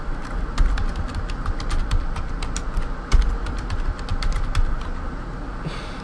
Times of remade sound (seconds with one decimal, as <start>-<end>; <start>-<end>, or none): 1.8-3.3